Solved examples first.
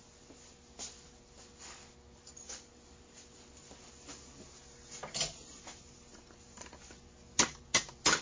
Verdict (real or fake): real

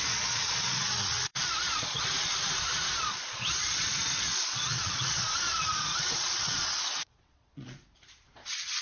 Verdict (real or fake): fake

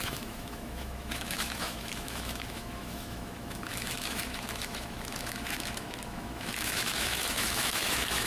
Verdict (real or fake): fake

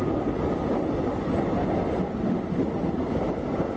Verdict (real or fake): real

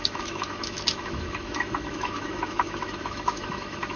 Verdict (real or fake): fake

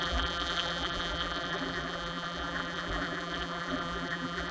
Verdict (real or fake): fake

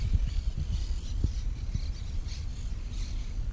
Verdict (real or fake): real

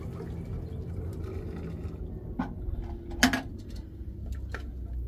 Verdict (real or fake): real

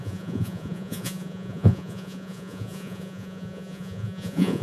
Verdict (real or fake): fake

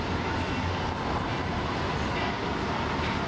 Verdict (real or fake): real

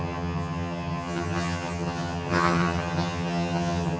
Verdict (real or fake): fake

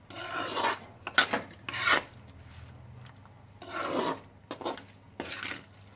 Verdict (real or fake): real